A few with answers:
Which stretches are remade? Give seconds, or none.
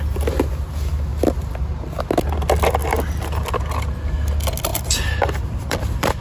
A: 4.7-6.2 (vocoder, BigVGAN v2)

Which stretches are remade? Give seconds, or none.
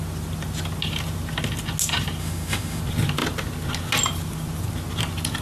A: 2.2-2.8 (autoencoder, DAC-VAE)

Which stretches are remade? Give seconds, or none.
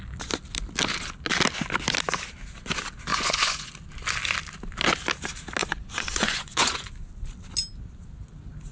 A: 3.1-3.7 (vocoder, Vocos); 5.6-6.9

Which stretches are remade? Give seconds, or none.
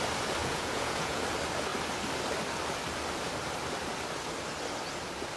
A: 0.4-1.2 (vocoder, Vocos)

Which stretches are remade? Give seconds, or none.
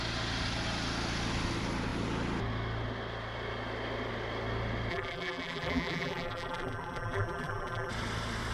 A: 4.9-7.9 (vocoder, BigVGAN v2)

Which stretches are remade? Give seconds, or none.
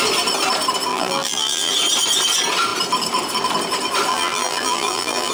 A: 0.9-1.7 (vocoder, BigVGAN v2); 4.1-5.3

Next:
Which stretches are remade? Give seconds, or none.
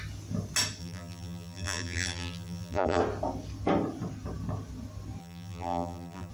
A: 0.8-3.0 (vocoder, BigVGAN v2); 5.2-6.3